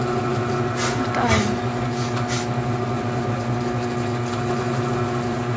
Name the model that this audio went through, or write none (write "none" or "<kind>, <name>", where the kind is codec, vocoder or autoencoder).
none